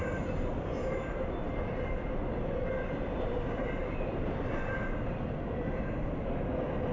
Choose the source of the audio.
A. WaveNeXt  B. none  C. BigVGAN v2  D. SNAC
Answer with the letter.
B